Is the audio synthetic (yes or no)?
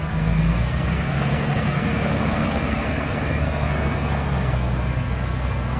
yes